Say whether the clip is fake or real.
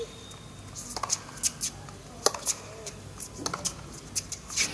real